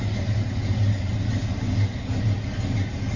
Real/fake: real